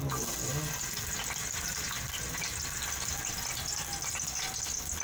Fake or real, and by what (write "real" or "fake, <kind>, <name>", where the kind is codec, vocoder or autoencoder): real